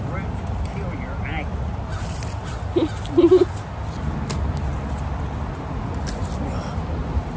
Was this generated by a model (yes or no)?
no